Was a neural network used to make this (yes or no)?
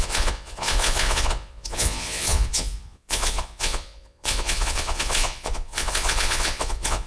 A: yes